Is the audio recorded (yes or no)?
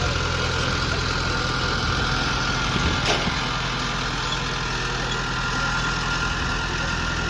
yes